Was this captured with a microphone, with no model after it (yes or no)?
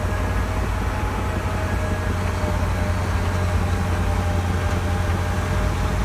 yes